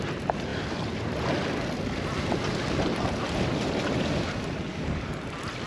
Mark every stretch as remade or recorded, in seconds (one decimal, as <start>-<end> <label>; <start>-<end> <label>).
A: 0.0-4.7 recorded; 4.7-5.2 remade; 5.2-5.7 recorded